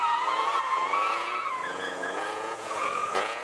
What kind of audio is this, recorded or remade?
remade